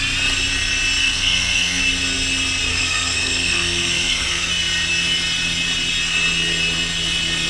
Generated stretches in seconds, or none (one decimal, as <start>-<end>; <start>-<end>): 1.0-1.8; 2.7-4.5